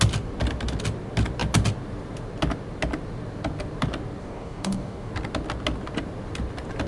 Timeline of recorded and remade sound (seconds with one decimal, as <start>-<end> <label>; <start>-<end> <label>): 0.0-4.2 recorded; 4.2-5.1 remade; 5.1-6.9 recorded